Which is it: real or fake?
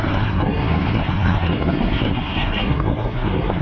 fake